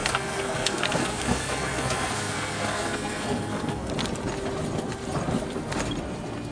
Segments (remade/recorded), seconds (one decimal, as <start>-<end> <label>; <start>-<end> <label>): 0.0-3.9 remade; 3.9-6.5 recorded